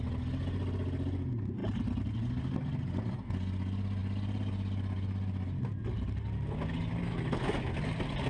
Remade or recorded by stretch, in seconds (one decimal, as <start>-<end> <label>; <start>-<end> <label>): 0.0-8.3 recorded